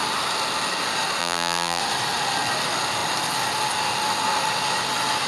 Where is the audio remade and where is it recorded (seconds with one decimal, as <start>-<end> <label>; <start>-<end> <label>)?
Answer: 0.0-1.2 recorded; 1.2-1.8 remade; 1.8-5.3 recorded